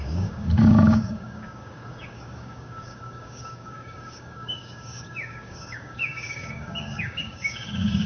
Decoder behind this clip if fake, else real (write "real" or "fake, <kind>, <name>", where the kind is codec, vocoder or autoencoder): fake, codec, DAC